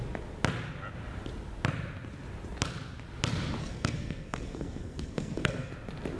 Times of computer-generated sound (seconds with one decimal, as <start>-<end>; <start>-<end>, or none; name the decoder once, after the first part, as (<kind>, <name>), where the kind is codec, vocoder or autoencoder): 3.6-5.7 (codec, SNAC)